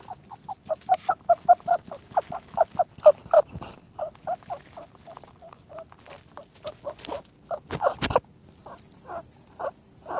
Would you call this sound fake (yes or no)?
no